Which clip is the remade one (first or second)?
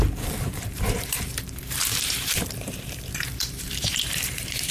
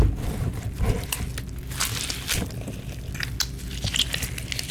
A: first